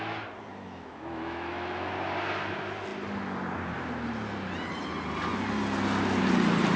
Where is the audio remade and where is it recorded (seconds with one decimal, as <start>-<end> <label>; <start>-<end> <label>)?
0.0-0.5 recorded; 0.5-1.9 remade; 1.9-6.8 recorded